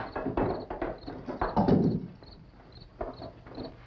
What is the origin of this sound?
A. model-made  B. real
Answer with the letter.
B